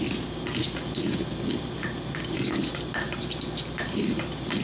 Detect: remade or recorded recorded